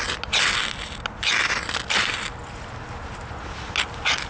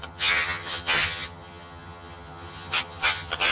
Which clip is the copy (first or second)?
second